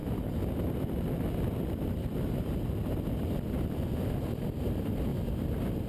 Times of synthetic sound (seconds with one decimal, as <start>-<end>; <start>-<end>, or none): 3.5-5.1